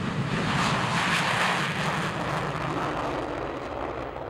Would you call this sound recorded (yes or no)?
yes